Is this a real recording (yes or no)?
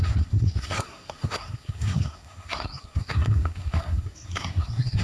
no